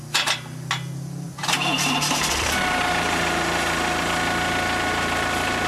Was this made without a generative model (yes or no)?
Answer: yes